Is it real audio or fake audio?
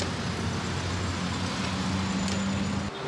real